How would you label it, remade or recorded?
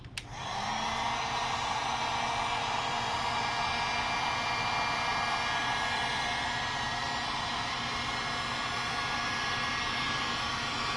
recorded